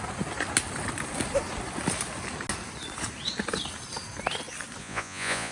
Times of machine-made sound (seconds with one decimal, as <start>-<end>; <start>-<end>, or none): 4.8-5.5